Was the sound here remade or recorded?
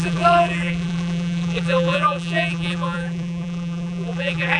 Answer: remade